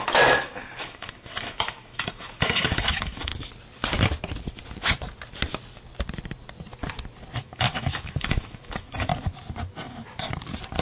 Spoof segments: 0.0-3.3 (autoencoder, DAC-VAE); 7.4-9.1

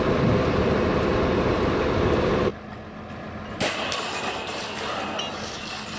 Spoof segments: none

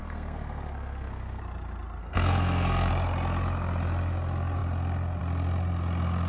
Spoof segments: 0.0-1.4 (codec, SNAC); 2.0-2.9

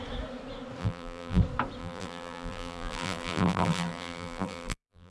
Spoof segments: 0.8-1.4 (vocoder, BigVGAN v2); 1.8-5.1